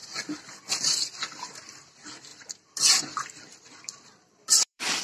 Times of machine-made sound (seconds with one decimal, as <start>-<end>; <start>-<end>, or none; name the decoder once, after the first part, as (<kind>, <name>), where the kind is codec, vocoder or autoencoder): 0.7-5.0 (vocoder, BigVGAN v2)